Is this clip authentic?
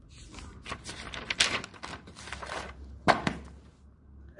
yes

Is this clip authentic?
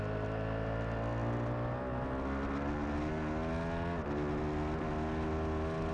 yes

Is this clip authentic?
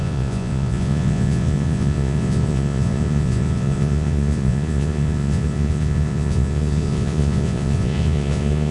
no